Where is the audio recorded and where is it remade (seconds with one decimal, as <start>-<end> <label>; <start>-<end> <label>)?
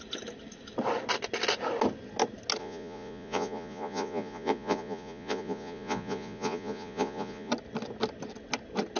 0.0-2.6 recorded; 2.6-7.5 remade; 7.5-9.0 recorded